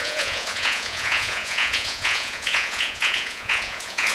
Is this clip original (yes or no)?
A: no